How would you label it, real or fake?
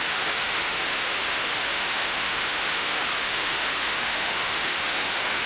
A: fake